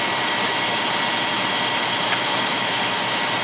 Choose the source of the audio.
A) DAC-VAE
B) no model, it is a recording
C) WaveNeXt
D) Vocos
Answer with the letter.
B